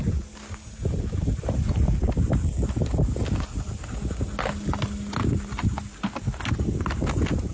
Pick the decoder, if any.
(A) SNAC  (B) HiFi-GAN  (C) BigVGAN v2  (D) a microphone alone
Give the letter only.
D